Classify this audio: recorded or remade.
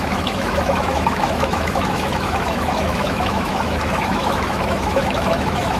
remade